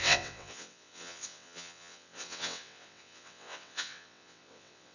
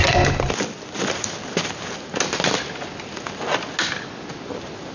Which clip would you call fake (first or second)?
first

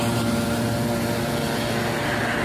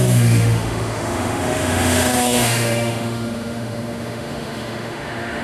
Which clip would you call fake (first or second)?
second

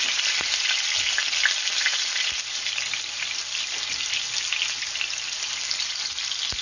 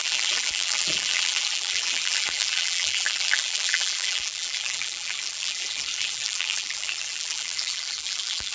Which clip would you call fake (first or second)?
second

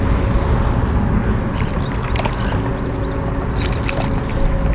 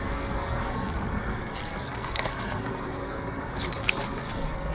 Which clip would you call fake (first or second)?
second